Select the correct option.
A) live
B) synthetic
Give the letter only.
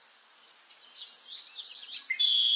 A